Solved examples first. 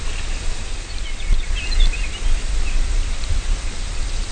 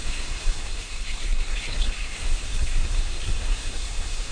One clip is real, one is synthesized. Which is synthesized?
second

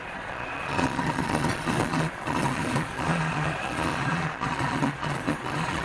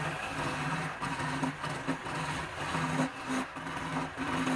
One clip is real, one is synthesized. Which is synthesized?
first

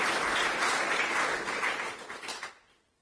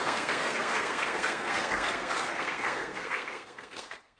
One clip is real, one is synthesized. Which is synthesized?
second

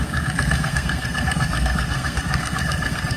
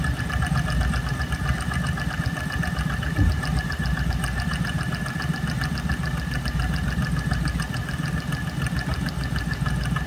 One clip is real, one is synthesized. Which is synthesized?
first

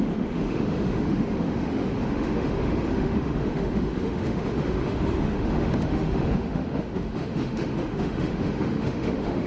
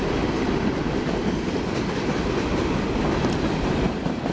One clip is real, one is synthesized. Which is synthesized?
first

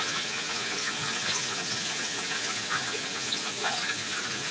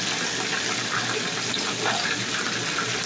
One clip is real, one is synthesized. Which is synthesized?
first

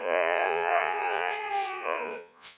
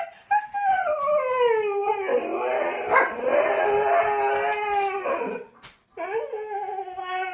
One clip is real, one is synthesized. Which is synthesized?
first